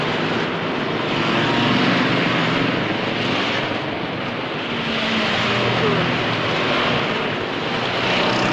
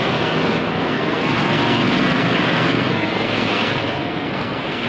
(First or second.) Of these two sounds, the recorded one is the first